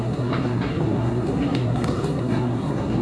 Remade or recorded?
remade